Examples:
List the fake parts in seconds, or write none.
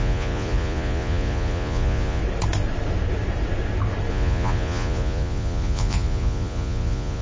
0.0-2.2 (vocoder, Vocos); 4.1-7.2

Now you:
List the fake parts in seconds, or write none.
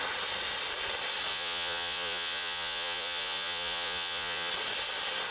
1.3-4.5 (vocoder, Vocos)